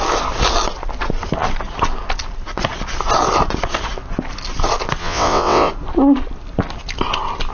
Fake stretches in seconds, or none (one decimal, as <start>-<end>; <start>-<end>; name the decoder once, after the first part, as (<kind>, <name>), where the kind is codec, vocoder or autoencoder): 5.0-5.7 (vocoder, WaveNeXt)